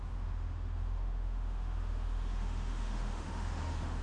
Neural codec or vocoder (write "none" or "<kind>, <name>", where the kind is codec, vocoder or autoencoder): autoencoder, DAC-VAE